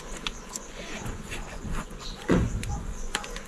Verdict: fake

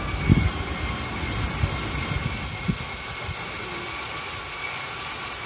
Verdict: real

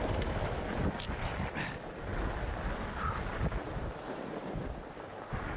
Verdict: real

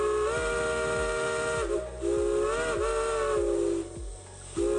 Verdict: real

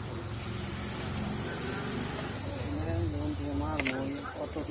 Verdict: real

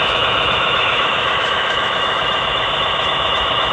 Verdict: fake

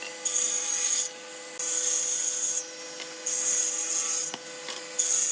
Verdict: real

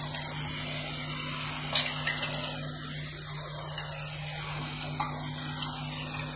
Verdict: real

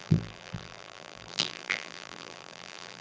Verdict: fake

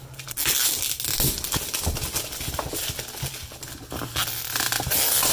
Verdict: real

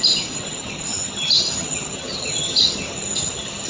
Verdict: fake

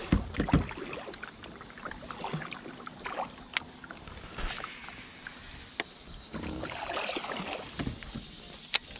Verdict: real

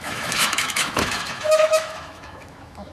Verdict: fake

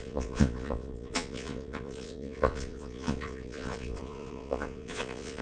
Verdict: fake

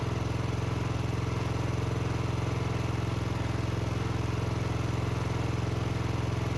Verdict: real